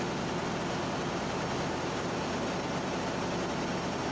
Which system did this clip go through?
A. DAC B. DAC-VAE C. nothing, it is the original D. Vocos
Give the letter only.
C